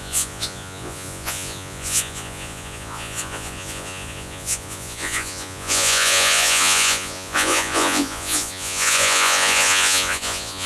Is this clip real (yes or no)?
no